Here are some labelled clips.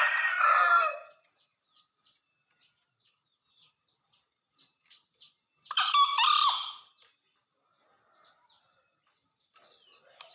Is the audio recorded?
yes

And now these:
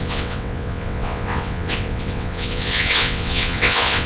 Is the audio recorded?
no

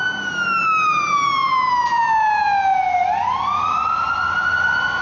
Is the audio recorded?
yes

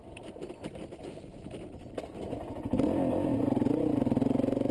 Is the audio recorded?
yes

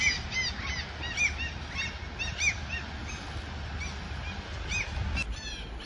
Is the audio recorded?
yes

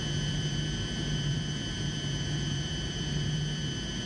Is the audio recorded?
no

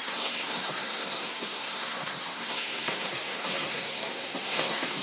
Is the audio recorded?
no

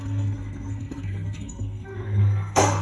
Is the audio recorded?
no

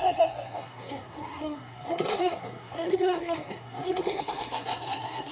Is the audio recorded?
no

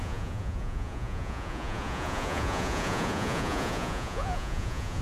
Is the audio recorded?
no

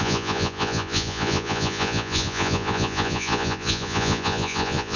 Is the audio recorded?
no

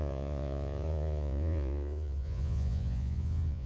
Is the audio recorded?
no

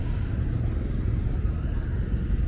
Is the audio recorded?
yes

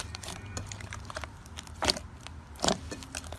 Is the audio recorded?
yes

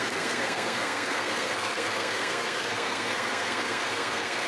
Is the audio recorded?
no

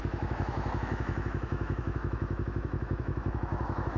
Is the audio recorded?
no